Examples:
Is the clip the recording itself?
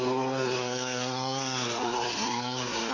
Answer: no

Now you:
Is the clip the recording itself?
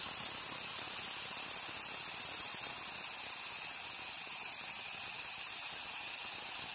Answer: yes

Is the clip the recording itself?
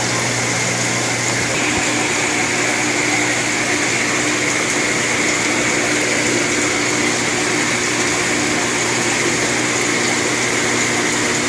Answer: yes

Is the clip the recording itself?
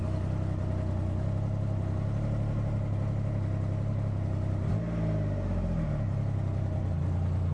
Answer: yes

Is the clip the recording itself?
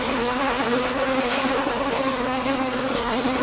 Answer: no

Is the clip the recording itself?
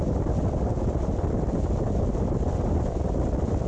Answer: yes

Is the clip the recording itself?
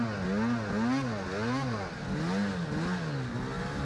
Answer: yes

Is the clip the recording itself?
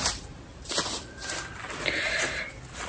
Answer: yes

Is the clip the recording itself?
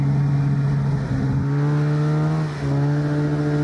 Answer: yes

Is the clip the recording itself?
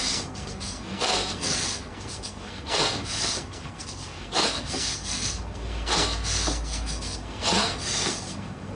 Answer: no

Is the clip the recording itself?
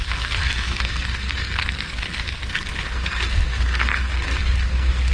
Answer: no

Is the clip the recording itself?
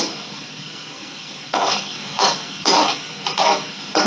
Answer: no